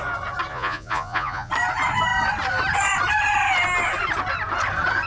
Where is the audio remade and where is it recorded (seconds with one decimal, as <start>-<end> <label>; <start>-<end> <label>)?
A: 0.0-0.5 recorded; 0.5-1.5 remade; 1.5-5.1 recorded